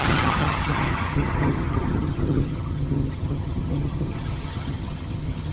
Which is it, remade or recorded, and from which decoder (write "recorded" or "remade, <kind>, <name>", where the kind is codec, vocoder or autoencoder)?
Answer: remade, vocoder, HiFi-GAN